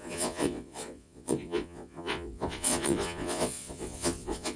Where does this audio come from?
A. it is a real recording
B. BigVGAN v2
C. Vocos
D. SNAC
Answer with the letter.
C